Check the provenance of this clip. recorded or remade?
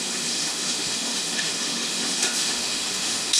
remade